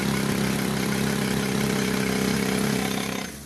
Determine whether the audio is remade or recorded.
recorded